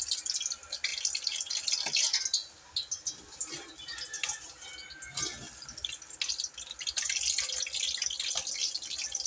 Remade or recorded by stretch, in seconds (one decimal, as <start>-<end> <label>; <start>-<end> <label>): 0.0-9.3 recorded